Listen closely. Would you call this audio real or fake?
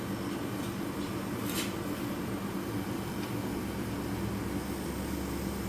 real